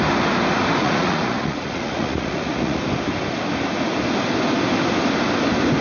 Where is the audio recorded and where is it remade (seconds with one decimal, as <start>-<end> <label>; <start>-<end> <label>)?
0.0-0.8 recorded; 0.8-2.8 remade; 2.8-5.8 recorded